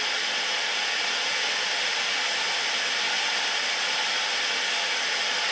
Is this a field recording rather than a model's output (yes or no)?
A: yes